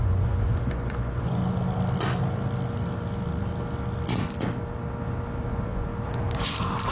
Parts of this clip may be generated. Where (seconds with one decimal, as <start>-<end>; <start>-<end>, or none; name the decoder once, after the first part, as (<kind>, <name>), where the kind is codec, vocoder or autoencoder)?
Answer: 0.0-1.4 (vocoder, Vocos); 5.5-5.9